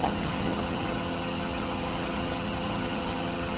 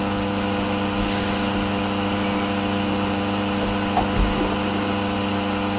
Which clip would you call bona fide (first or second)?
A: second